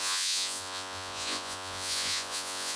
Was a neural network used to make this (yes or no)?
yes